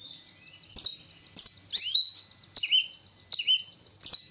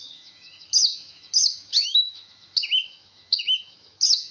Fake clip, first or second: second